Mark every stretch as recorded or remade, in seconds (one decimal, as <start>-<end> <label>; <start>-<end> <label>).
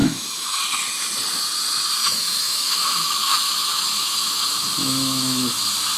0.0-0.6 remade; 0.6-2.0 recorded; 2.0-5.6 remade; 5.6-6.0 recorded